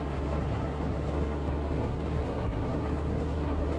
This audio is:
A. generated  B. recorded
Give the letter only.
A